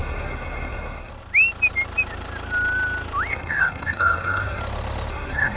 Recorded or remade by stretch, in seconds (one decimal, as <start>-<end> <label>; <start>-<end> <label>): 0.0-1.1 remade; 1.1-3.3 recorded; 3.3-4.6 remade; 4.6-5.1 recorded; 5.1-5.6 remade